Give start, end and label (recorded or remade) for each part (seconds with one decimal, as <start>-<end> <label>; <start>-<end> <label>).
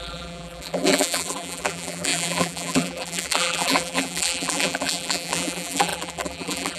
0.0-6.8 remade